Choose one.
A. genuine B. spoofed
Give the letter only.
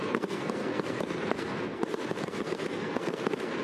B